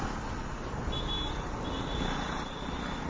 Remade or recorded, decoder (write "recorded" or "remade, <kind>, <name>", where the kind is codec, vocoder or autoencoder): recorded